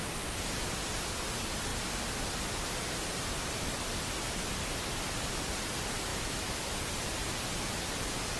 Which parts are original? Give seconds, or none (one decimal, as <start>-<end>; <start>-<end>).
0.0-6.1; 6.7-8.4